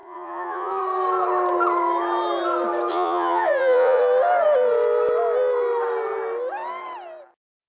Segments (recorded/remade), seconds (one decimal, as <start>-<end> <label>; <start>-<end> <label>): 0.0-0.8 remade; 0.8-2.9 recorded; 2.9-4.0 remade; 4.0-7.7 recorded